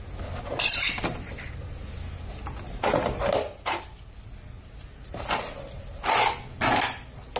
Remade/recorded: recorded